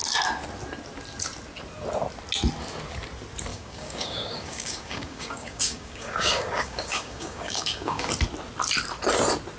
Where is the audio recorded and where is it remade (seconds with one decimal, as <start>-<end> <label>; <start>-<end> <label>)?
0.0-3.5 recorded; 3.5-8.1 remade; 8.1-9.6 recorded